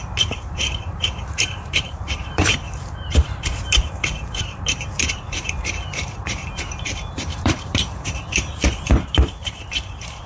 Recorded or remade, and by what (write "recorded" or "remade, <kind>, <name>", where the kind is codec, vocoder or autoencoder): remade, vocoder, BigVGAN v2